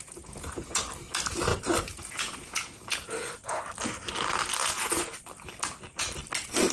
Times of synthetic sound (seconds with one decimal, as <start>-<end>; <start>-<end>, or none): 0.0-0.8; 1.5-3.6; 4.6-5.2